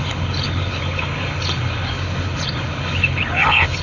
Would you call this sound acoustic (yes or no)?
no